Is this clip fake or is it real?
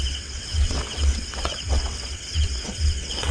fake